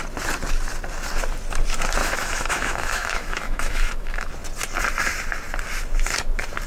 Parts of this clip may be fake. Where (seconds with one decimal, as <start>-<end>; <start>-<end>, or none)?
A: 2.0-4.3